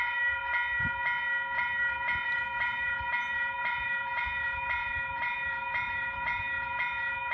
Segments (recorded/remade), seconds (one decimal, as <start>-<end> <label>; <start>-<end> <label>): 0.0-0.4 remade; 0.4-1.6 recorded; 1.6-7.3 remade